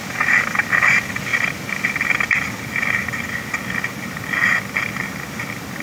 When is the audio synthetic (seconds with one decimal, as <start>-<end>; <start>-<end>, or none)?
none